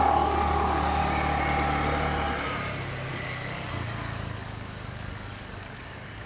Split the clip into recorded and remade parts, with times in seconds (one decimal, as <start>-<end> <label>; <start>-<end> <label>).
0.0-1.0 remade; 1.0-3.1 recorded; 3.1-6.3 remade